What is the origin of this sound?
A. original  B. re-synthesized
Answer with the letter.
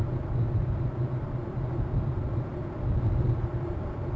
A